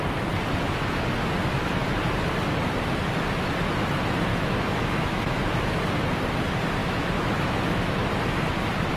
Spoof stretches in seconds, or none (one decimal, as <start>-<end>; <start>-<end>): 4.3-5.8; 6.8-8.1